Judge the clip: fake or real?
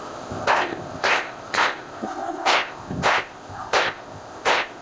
fake